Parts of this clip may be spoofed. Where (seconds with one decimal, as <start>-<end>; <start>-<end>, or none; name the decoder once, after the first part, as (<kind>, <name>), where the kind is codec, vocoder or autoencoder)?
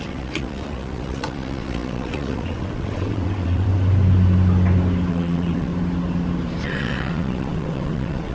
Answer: 0.0-3.7 (vocoder, WaveNeXt); 5.1-5.7; 6.6-8.3